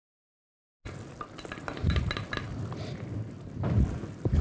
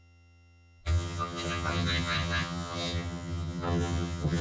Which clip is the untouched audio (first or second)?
first